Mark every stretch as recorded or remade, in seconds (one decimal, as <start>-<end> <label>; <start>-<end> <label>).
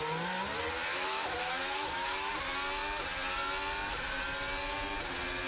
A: 0.0-0.9 recorded; 0.9-2.3 remade; 2.3-5.5 recorded